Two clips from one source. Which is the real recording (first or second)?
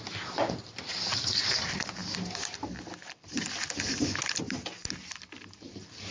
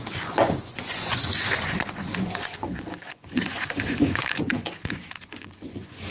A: first